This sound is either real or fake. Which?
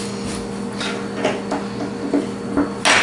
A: real